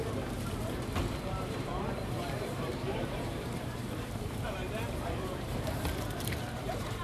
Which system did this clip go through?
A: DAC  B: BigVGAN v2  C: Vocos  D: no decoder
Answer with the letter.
B